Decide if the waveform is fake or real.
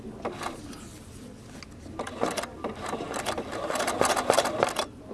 real